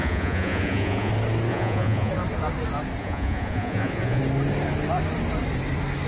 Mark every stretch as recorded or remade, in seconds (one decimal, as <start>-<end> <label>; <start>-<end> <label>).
0.0-1.1 remade; 1.1-1.5 recorded; 1.5-2.1 remade; 2.1-3.0 recorded; 3.0-4.2 remade; 4.2-6.1 recorded